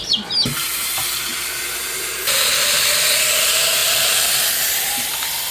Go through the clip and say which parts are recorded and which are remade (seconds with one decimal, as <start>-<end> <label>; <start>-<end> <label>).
0.0-3.8 recorded; 3.8-5.1 remade; 5.1-5.5 recorded